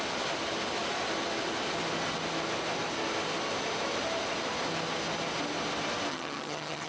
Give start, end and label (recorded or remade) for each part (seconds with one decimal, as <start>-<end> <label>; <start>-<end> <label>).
0.0-6.1 recorded; 6.1-6.9 remade